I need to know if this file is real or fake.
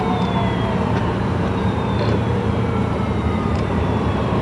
fake